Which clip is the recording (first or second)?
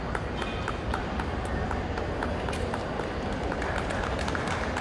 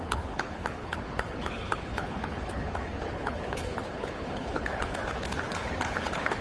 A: first